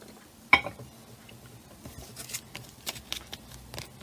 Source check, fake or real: real